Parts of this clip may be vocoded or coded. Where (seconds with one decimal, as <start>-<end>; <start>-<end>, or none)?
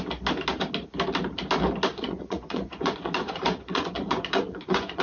1.9-5.0